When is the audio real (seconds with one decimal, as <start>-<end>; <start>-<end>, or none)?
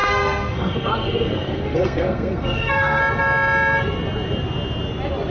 3.0-5.3